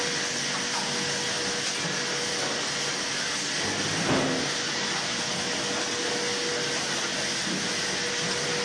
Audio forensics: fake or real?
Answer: real